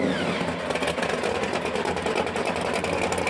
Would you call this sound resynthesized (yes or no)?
no